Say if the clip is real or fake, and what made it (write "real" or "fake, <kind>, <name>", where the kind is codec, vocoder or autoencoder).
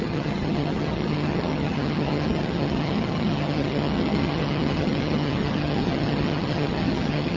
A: fake, vocoder, HiFi-GAN